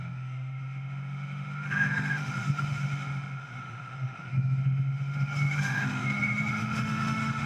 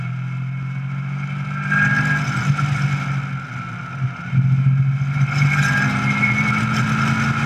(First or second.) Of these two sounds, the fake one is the first